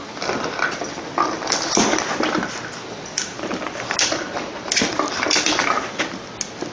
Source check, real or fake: real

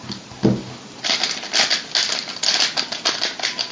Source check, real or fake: real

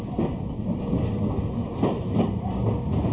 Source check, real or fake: real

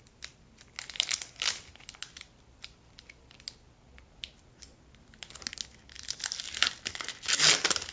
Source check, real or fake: real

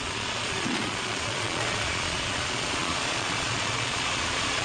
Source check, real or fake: fake